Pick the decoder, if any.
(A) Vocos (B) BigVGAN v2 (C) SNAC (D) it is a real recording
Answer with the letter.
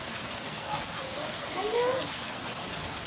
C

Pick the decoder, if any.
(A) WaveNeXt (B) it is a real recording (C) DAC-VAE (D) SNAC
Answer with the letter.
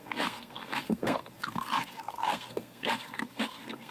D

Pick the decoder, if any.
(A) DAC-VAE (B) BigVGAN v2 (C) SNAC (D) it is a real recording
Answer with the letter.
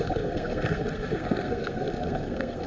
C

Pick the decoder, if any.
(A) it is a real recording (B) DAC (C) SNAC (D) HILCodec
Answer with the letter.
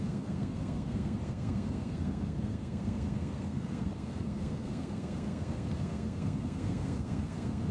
C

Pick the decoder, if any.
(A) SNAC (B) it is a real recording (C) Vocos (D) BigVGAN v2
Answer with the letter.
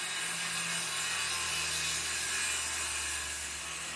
B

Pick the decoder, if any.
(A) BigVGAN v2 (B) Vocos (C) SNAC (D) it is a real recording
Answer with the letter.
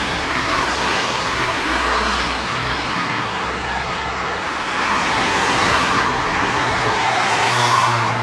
C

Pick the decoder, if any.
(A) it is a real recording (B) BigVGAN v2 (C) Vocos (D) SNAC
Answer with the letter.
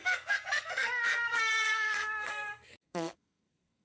D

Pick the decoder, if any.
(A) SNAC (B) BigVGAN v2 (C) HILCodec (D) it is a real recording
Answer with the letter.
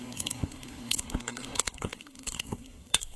A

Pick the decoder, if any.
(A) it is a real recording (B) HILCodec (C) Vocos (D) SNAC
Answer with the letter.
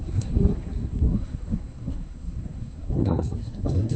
D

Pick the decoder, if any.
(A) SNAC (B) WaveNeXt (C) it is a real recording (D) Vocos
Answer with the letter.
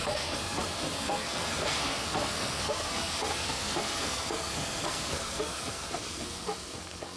A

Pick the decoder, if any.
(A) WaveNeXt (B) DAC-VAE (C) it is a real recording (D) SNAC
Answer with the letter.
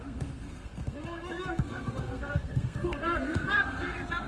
D